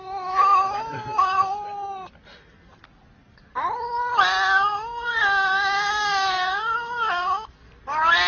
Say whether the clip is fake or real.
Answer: real